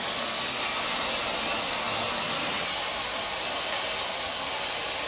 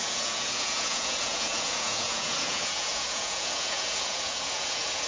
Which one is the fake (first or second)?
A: second